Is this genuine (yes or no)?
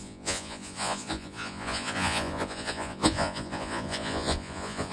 no